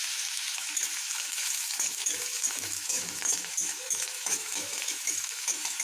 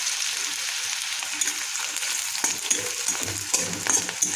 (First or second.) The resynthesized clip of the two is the first